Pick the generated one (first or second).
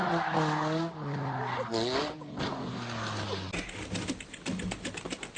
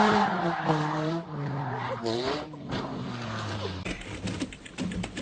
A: second